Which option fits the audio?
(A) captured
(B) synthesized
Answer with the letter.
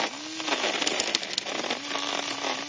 A